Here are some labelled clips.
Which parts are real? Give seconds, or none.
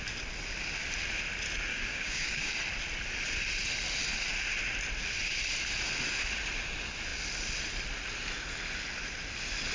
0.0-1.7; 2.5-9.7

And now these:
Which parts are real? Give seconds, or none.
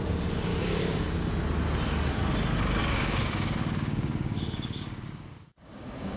0.0-0.5; 1.3-2.8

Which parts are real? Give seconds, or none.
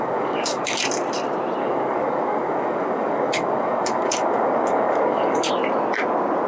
0.8-1.6; 5.5-6.5